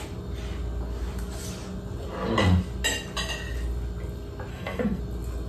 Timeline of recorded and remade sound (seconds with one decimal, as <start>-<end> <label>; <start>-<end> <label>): 0.0-4.5 recorded; 4.5-5.0 remade; 5.0-5.5 recorded